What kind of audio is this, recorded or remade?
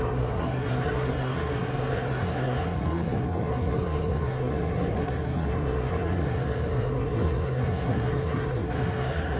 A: remade